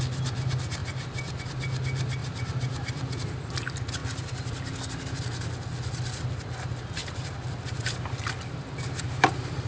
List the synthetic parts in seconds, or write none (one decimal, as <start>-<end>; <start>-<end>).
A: 2.2-3.5; 7.0-8.9